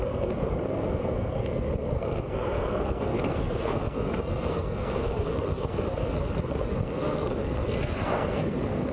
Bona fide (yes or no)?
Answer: no